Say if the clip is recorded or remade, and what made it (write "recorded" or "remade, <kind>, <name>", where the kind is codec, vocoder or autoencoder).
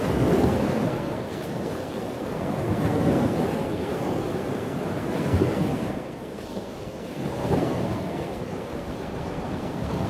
remade, codec, SNAC